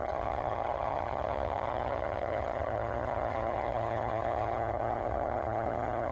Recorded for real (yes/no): no